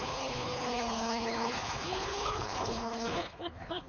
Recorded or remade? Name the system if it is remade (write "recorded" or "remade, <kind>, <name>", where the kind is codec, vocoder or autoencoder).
remade, codec, HILCodec